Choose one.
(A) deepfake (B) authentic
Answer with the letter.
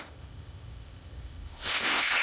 A